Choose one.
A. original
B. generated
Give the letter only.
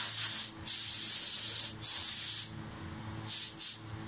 A